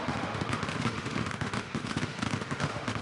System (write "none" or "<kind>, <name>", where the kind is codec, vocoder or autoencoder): autoencoder, DAC-VAE